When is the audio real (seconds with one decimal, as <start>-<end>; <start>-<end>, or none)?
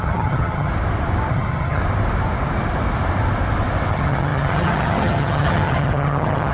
0.7-1.3; 1.8-3.9